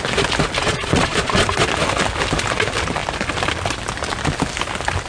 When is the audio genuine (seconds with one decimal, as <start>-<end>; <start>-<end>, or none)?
0.0-0.6; 1.6-5.1